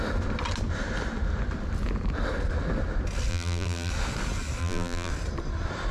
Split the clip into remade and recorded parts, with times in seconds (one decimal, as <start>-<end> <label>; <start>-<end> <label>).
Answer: 0.0-3.3 recorded; 3.3-3.9 remade; 3.9-4.6 recorded; 4.6-5.1 remade; 5.1-5.9 recorded